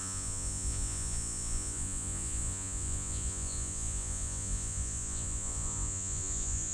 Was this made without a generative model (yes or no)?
no